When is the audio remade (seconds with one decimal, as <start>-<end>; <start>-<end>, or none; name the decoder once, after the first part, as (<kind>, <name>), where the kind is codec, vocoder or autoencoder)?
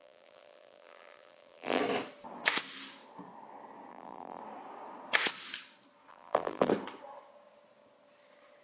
0.0-1.8 (vocoder, BigVGAN v2); 3.9-4.4; 6.1-6.7